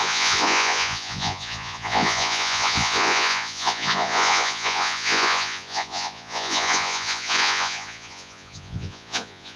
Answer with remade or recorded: remade